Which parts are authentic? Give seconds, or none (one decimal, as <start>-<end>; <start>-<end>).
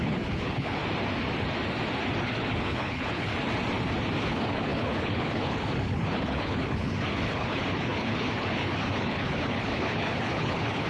0.8-2.2; 3.3-4.2